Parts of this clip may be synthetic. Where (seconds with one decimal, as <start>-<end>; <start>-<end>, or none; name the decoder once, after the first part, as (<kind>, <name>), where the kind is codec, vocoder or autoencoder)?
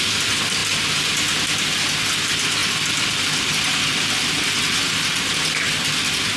none